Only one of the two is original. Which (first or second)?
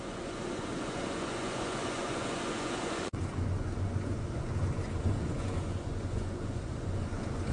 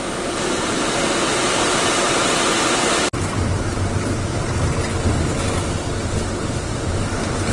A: second